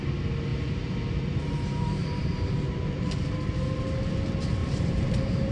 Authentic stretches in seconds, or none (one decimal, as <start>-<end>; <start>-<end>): 0.0-0.5; 3.0-4.6